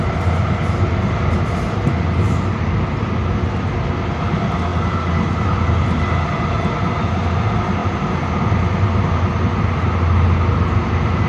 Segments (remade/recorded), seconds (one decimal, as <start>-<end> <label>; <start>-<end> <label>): 0.0-11.3 recorded